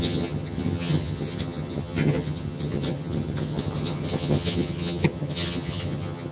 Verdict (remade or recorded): remade